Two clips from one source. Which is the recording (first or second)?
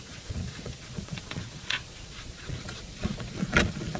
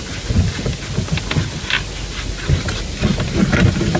second